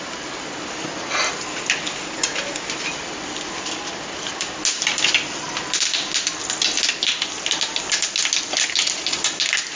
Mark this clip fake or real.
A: real